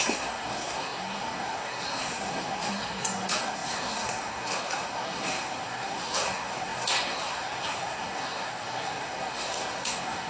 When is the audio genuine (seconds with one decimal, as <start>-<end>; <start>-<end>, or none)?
none